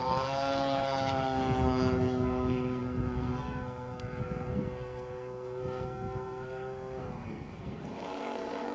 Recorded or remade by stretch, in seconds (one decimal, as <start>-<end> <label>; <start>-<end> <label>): 0.0-8.7 remade